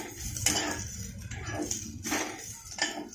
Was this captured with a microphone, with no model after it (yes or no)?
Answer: yes